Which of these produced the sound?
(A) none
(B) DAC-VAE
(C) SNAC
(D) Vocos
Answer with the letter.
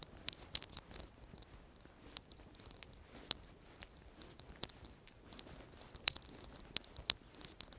A